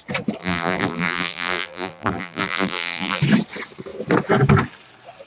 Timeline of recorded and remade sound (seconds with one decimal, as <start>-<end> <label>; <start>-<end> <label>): 0.0-0.4 recorded; 0.4-3.2 remade; 3.2-5.3 recorded